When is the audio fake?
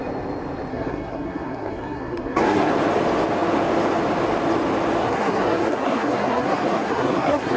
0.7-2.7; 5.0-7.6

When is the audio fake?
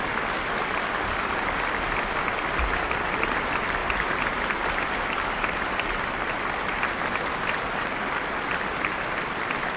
none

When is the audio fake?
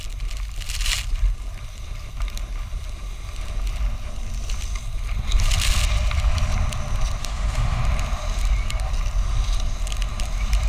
7.2-7.8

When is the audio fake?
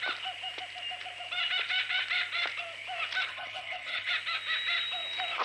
3.3-4.1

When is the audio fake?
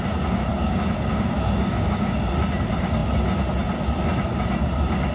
0.4-2.3